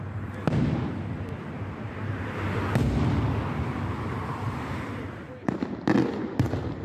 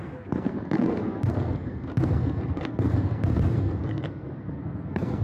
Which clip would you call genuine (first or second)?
first